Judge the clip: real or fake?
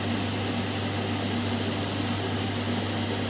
real